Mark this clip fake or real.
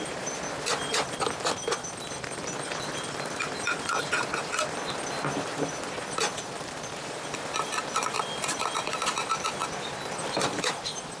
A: real